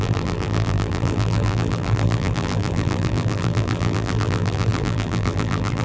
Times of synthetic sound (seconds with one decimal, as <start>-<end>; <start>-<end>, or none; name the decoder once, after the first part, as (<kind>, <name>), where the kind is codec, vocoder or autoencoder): 0.0-5.8 (vocoder, BigVGAN v2)